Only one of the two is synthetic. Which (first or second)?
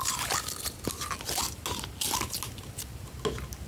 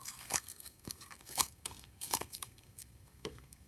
second